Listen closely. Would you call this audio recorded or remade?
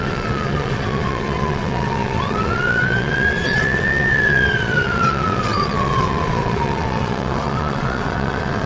remade